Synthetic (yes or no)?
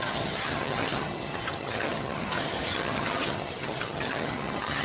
yes